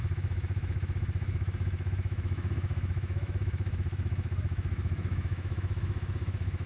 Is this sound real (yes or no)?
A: no